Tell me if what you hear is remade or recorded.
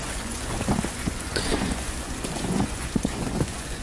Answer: remade